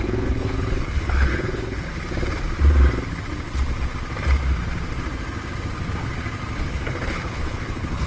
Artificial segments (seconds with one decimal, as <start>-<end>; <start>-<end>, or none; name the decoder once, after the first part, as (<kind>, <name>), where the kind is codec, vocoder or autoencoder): 0.0-1.9 (codec, HILCodec); 6.6-8.1